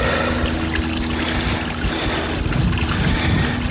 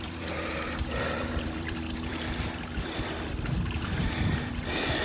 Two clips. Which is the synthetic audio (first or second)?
second